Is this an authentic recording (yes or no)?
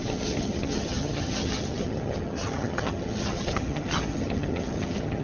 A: no